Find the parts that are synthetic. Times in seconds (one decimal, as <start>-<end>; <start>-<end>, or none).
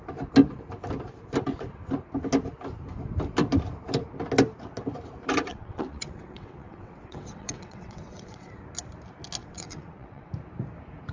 5.5-8.5; 9.4-10.3